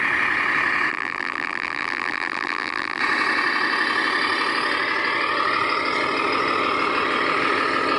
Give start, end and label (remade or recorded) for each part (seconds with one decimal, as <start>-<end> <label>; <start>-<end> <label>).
0.0-0.9 recorded; 0.9-3.0 remade; 3.0-8.0 recorded